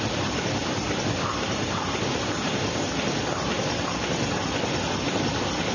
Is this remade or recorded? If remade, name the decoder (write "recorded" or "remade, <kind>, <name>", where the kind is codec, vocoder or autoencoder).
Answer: recorded